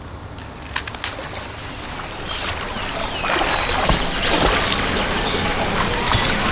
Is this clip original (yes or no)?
yes